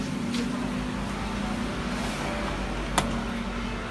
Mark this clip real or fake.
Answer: real